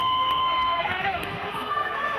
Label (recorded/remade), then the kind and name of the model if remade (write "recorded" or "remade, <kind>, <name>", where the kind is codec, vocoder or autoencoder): remade, codec, SNAC